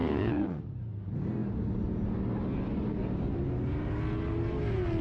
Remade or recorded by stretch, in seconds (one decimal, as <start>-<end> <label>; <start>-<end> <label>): 0.0-0.6 remade; 0.6-5.0 recorded